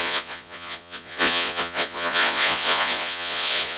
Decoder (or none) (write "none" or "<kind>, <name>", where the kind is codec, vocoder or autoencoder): vocoder, Vocos